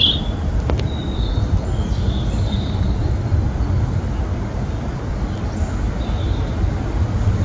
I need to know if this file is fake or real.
real